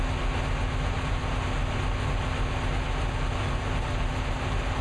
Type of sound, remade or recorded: recorded